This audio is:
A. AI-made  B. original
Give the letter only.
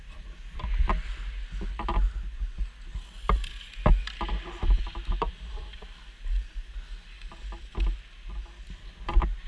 B